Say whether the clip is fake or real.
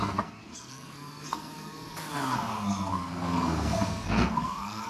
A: fake